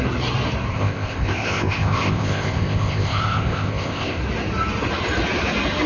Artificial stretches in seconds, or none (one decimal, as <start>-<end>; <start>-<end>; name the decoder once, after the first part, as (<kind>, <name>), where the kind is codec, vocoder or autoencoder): 0.7-4.2 (codec, ZipCodec)